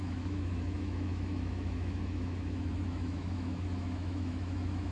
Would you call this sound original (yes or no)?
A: no